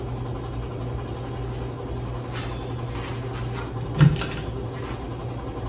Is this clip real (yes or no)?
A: yes